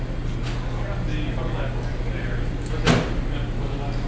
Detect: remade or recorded recorded